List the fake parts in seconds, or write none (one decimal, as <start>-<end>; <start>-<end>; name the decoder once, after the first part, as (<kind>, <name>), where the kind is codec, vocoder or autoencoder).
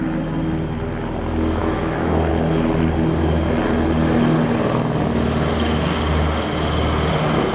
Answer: 1.6-2.3 (autoencoder, DAC-VAE)